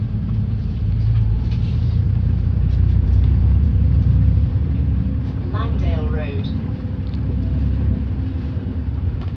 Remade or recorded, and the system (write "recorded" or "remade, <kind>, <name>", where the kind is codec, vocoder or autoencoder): remade, vocoder, BigVGAN v2